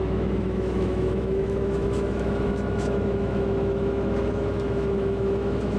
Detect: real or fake fake